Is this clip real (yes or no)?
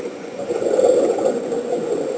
no